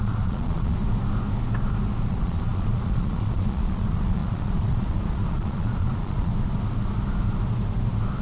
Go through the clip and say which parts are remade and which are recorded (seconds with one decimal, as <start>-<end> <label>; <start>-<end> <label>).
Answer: 0.0-0.8 remade; 0.8-2.1 recorded; 2.1-6.3 remade; 6.3-8.2 recorded